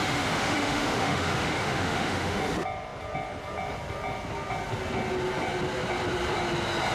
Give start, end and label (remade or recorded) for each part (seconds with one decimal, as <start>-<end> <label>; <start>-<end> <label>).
0.0-2.4 remade; 2.4-6.9 recorded